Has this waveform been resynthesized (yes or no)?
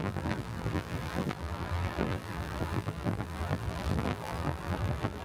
yes